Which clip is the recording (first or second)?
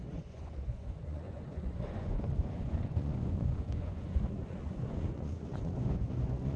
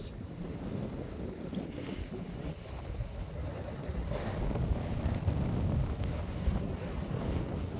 second